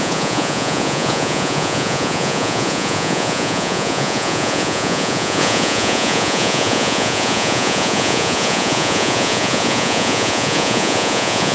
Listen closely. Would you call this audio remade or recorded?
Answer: remade